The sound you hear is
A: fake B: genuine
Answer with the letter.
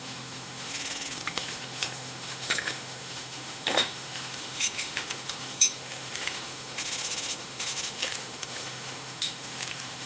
A